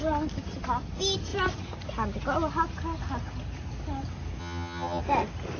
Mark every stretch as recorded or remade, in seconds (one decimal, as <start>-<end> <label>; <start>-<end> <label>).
0.0-4.4 recorded; 4.4-5.0 remade; 5.0-5.6 recorded